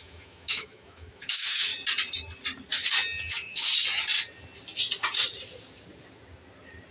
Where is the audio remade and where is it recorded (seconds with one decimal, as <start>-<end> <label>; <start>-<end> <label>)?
0.0-1.7 remade; 1.7-3.3 recorded; 3.3-3.7 remade; 3.7-6.9 recorded